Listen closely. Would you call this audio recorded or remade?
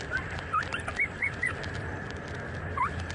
remade